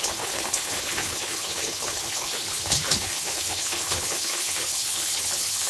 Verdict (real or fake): fake